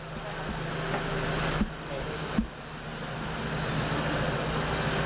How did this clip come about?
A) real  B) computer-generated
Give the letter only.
A